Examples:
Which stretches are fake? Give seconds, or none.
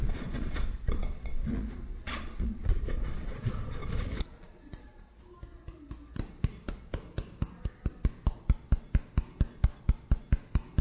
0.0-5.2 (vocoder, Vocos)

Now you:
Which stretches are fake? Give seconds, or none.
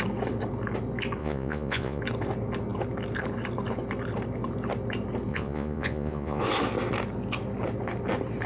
1.2-2.0 (vocoder, Vocos); 5.3-6.4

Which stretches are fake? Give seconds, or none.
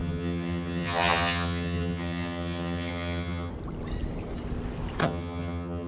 0.0-3.5 (vocoder, HiFi-GAN); 5.0-5.9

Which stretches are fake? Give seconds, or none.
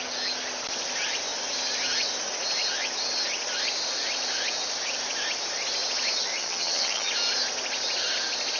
6.4-7.1 (vocoder, HiFi-GAN)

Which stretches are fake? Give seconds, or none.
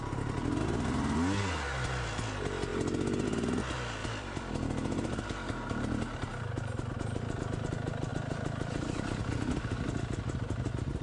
4.0-5.1 (vocoder, BigVGAN v2); 6.3-6.9; 8.1-9.2